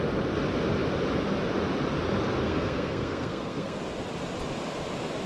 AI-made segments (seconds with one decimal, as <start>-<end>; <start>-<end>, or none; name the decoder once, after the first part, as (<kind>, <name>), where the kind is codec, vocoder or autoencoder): 2.4-3.8 (codec, SNAC)